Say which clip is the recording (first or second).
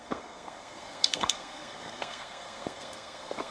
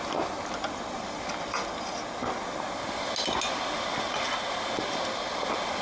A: second